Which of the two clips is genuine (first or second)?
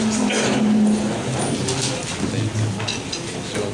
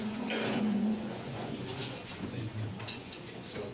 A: first